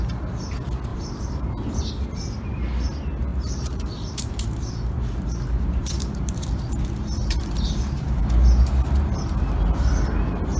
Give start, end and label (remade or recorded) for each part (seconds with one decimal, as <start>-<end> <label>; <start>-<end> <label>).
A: 0.0-0.9 recorded; 0.9-1.9 remade; 1.9-3.3 recorded; 3.3-6.8 remade; 6.8-7.2 recorded; 7.2-8.2 remade; 8.2-10.6 recorded